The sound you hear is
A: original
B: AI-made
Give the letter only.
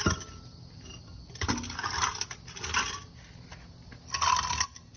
A